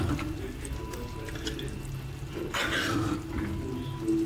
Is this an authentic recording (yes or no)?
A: yes